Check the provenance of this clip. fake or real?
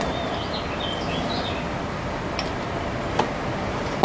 real